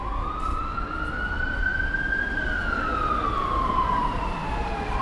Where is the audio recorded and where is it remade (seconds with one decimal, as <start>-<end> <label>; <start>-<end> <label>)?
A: 0.0-5.0 recorded